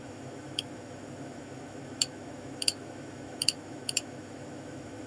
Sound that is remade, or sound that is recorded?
remade